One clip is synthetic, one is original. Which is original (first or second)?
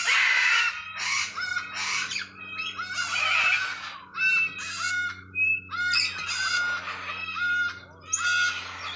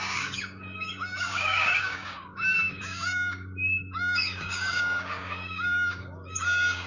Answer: first